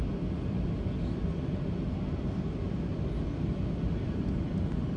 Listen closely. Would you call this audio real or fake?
real